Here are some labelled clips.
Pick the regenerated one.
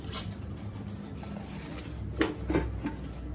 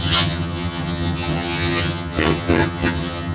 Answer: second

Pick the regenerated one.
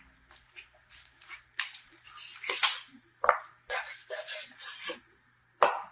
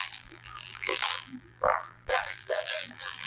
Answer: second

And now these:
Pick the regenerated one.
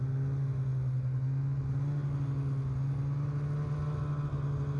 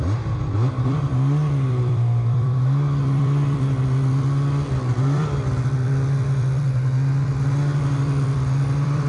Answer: second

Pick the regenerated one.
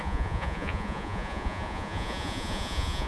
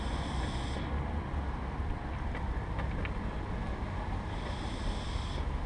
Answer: first